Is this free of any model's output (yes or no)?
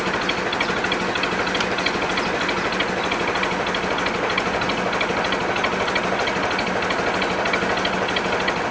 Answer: yes